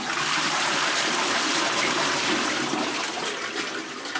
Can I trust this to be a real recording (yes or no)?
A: yes